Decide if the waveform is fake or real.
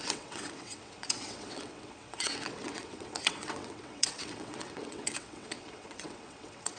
fake